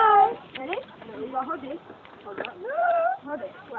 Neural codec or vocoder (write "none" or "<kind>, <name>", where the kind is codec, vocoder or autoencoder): vocoder, BigVGAN v2